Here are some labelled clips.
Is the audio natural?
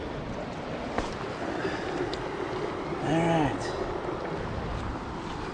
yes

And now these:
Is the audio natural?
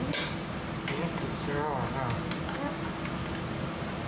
yes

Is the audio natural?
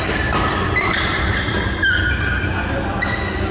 yes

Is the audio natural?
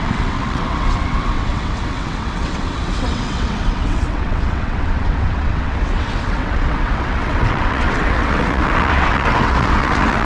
no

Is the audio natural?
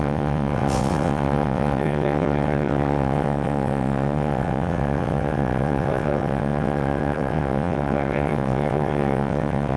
no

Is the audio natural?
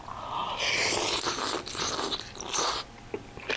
yes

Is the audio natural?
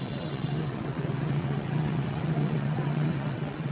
no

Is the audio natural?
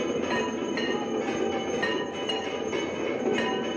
yes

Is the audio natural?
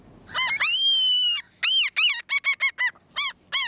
yes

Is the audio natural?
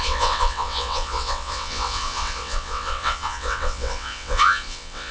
no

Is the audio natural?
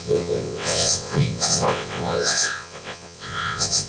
no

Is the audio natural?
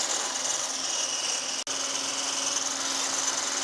yes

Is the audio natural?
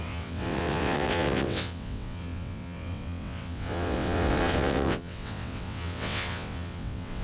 no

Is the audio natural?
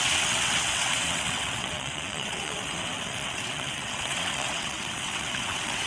no